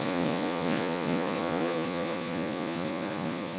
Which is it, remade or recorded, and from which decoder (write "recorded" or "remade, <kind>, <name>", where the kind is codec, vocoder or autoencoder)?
remade, vocoder, Vocos